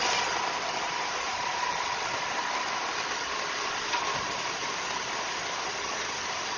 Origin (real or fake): fake